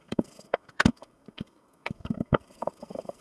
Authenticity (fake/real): fake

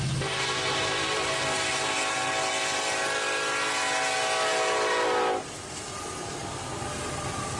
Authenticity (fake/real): real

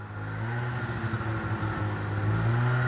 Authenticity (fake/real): real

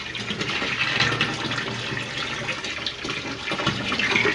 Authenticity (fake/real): real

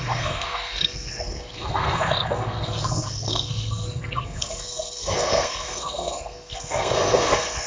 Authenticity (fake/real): fake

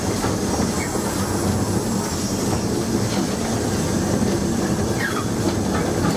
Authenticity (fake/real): real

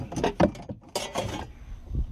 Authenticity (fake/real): real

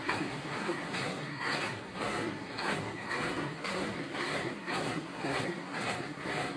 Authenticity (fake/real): fake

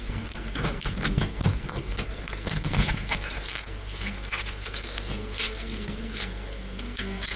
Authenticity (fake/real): fake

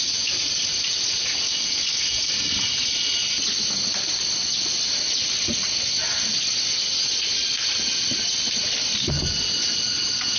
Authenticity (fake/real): real